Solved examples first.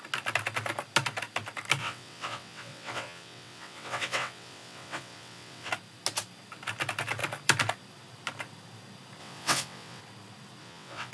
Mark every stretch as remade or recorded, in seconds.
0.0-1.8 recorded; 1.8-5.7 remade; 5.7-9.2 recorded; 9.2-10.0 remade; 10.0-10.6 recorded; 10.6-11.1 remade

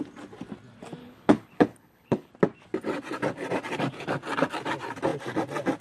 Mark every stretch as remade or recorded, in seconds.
0.0-1.0 recorded; 1.0-2.3 remade; 2.3-5.8 recorded

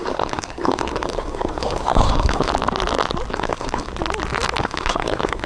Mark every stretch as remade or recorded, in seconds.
0.0-2.5 remade; 2.5-3.3 recorded; 3.3-3.9 remade; 3.9-4.6 recorded; 4.6-5.5 remade